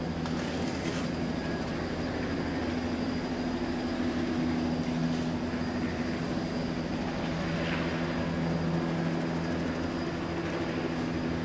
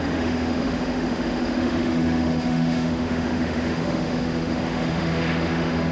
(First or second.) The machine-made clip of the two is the second